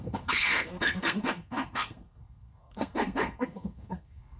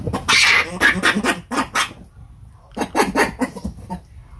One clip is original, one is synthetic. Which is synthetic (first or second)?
first